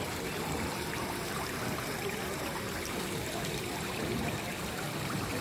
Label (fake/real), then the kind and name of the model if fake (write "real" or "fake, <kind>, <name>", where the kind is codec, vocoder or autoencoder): fake, vocoder, BigVGAN v2